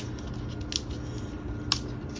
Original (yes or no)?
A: yes